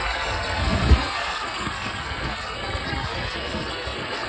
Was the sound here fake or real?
fake